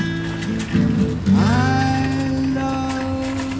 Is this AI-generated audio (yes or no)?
no